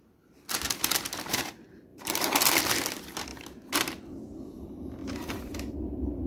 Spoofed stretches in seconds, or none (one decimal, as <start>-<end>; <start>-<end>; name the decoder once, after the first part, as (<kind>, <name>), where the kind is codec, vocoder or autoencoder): 1.9-2.5 (vocoder, BigVGAN v2); 5.0-6.3